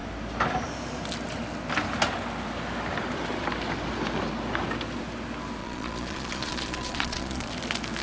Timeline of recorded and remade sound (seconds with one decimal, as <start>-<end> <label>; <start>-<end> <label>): 0.0-5.6 recorded; 5.6-7.5 remade; 7.5-8.0 recorded